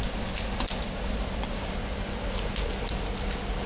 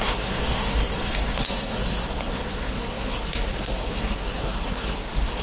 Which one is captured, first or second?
first